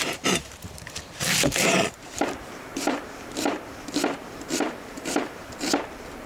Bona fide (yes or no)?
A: no